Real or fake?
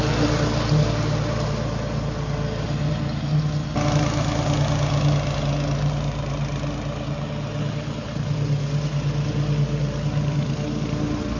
real